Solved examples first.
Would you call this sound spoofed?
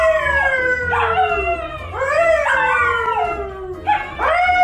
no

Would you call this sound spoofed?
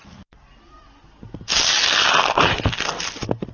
no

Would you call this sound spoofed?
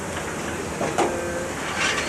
no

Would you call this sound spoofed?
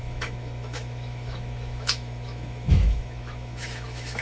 yes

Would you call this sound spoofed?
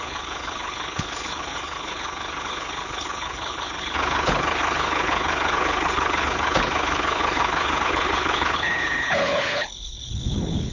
yes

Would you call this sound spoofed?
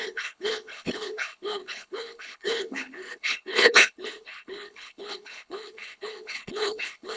yes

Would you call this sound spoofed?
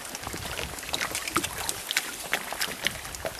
no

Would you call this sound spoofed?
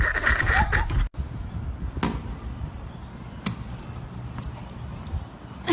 no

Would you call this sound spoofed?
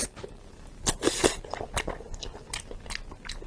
no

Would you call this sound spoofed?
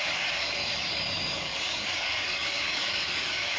yes